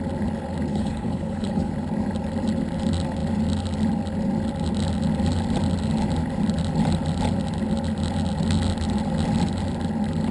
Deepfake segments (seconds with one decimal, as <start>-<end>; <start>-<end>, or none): 0.7-1.7